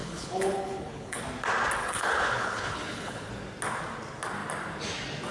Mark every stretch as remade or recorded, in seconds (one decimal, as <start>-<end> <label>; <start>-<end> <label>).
0.0-1.2 remade; 1.2-1.8 recorded; 1.8-3.3 remade; 3.3-5.3 recorded